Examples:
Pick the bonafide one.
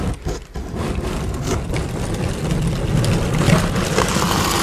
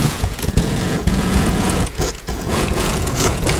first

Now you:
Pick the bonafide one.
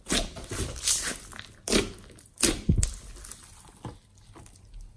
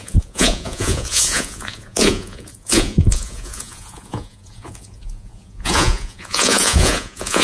first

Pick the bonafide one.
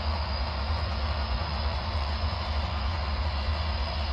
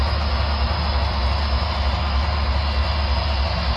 second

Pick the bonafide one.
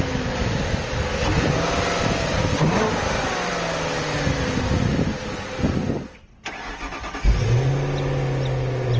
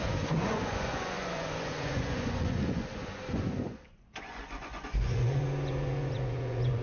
first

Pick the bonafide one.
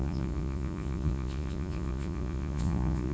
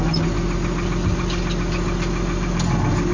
second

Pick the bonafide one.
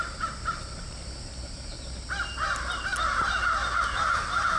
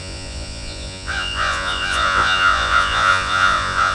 first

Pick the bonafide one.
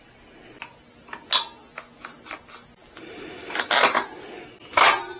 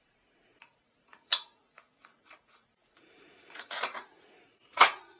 first